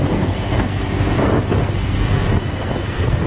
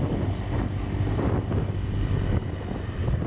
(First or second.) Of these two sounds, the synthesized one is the first